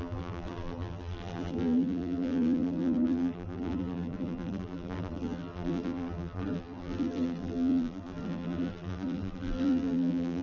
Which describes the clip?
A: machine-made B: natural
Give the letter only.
A